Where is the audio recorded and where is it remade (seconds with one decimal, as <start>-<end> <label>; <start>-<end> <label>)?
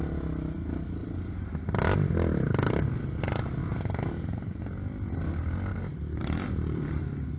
0.0-3.6 recorded; 3.6-4.6 remade; 4.6-5.7 recorded; 5.7-7.0 remade; 7.0-7.4 recorded